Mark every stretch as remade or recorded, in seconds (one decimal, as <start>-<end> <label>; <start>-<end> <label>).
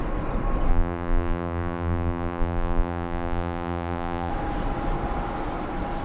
0.0-0.7 recorded; 0.7-4.3 remade; 4.3-6.0 recorded